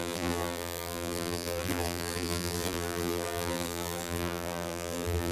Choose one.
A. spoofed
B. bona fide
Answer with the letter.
A